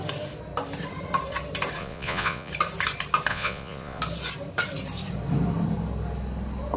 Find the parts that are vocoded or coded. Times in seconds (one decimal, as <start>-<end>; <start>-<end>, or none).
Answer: 1.8-2.5; 3.3-4.0